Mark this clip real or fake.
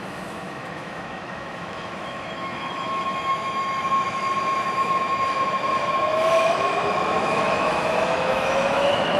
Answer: fake